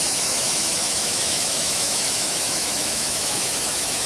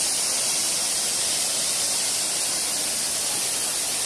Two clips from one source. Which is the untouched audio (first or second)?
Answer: second